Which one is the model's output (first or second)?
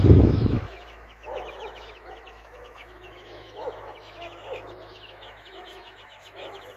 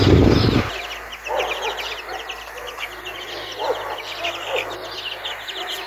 first